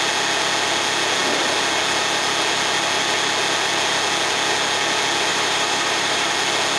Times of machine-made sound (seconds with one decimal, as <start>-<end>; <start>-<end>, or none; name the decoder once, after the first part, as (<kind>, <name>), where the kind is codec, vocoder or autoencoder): 5.3-6.3 (vocoder, BigVGAN v2)